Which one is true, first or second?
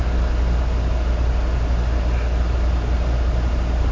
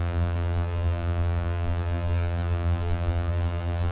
first